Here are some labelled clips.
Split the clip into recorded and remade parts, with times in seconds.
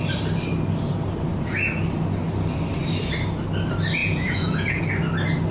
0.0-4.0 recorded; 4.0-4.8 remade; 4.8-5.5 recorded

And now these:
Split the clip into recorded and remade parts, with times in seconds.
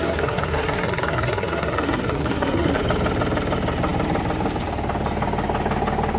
0.0-2.8 remade; 2.8-6.2 recorded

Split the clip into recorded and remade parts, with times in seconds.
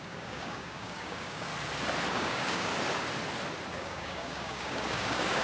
0.0-1.5 remade; 1.5-2.1 recorded; 2.1-2.7 remade; 2.7-3.7 recorded; 3.7-5.4 remade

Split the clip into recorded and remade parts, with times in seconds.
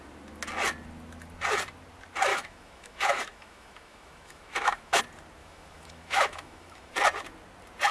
0.0-2.3 recorded; 2.3-5.0 remade; 5.0-5.4 recorded; 5.4-6.9 remade; 6.9-7.9 recorded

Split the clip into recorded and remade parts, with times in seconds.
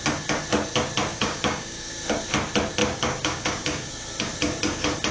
0.0-1.1 recorded; 1.1-1.9 remade; 1.9-2.8 recorded; 2.8-3.9 remade; 3.9-5.1 recorded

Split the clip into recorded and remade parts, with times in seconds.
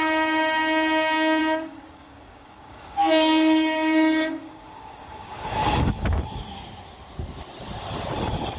0.0-1.4 recorded; 1.4-5.9 remade; 5.9-8.6 recorded